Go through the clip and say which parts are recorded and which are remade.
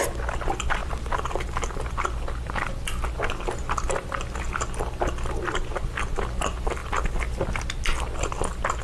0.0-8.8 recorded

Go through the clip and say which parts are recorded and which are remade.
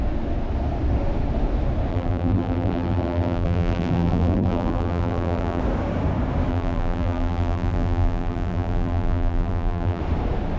0.0-1.9 recorded; 1.9-5.6 remade; 5.6-6.5 recorded; 6.5-10.0 remade; 10.0-10.6 recorded